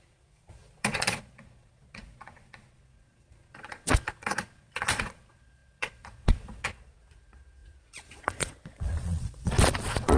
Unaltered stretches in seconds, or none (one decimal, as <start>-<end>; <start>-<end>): none